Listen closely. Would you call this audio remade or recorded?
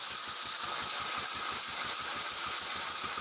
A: recorded